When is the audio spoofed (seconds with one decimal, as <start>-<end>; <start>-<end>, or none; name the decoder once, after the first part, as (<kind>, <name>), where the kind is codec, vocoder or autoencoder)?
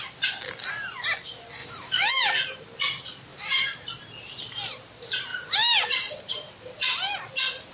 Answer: 1.6-2.1 (vocoder, BigVGAN v2); 3.3-3.9; 5.3-6.5